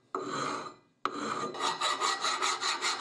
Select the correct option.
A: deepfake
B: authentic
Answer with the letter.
B